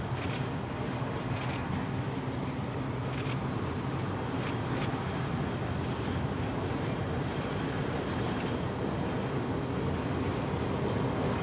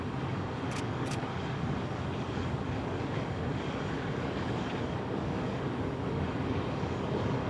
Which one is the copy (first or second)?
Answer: second